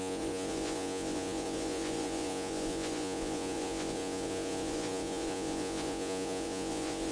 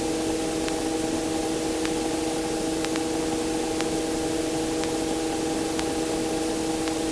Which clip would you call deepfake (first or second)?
first